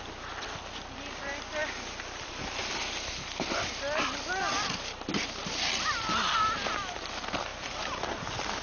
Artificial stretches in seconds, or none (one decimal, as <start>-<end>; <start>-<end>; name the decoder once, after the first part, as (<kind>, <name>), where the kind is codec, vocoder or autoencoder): 7.5-8.2 (vocoder, BigVGAN v2)